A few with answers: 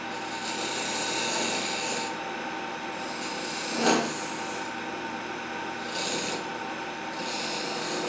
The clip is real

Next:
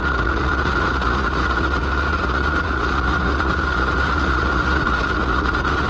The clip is fake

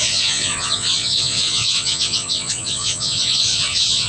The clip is fake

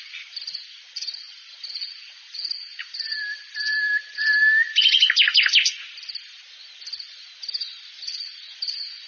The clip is real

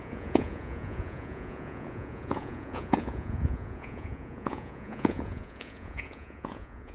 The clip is fake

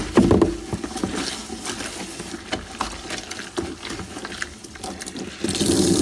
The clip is real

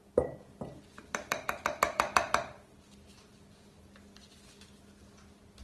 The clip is real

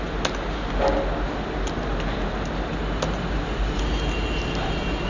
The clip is real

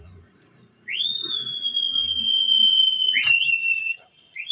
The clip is fake